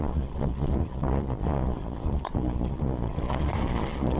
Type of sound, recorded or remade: remade